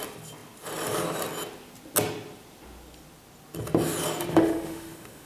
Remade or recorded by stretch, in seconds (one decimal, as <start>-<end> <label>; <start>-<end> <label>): 0.0-4.3 recorded; 4.3-5.3 remade